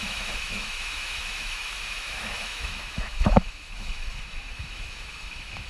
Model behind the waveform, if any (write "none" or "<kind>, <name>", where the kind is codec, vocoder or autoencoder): autoencoder, DAC-VAE